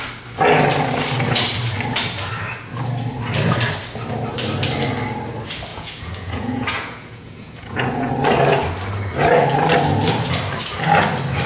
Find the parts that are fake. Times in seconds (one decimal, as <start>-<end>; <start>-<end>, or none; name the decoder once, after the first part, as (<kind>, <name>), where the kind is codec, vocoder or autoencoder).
5.7-8.1 (vocoder, Vocos)